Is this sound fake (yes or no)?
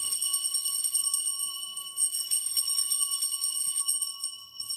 yes